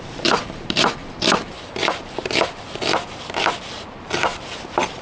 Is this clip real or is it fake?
fake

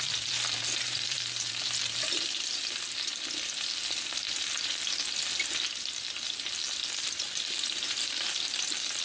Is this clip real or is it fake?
fake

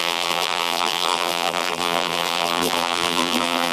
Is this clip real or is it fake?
fake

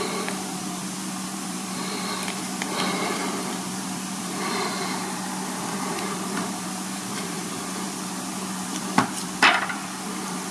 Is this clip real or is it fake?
fake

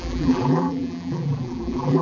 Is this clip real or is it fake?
fake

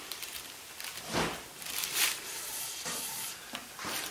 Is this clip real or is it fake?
real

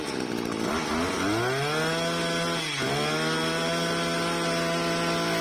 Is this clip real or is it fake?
real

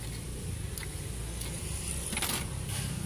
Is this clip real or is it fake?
real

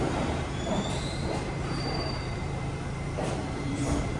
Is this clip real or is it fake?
fake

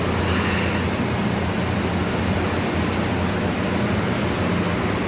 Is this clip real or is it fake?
real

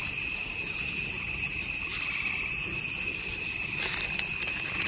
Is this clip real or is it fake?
real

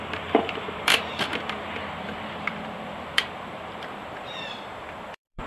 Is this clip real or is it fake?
fake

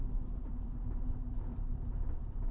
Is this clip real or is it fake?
fake